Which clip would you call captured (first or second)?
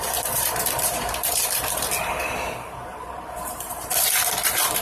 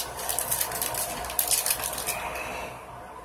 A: second